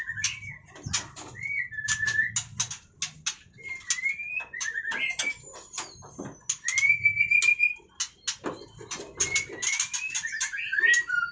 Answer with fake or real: real